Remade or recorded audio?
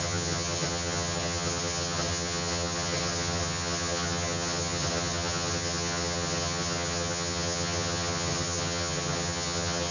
remade